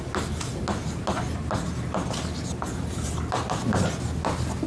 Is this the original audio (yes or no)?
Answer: yes